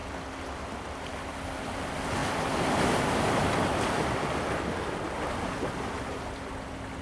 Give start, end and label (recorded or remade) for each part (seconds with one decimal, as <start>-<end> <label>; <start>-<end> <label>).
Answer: 0.0-7.0 recorded